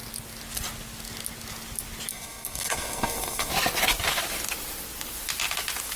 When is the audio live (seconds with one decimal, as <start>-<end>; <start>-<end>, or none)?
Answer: 0.0-2.1; 3.5-6.0